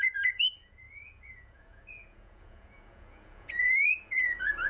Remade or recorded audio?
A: remade